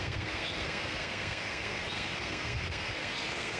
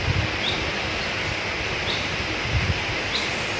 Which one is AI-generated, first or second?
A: first